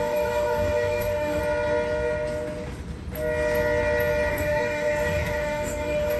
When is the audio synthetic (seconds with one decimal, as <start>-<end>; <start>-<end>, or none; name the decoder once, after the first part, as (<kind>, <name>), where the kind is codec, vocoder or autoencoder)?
0.0-1.4 (codec, DAC); 4.3-6.2